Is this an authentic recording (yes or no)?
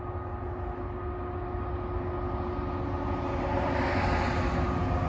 yes